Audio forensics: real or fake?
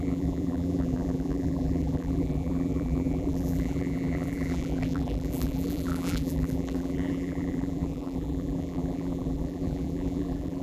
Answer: fake